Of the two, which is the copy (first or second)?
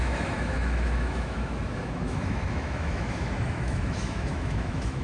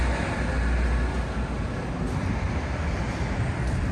first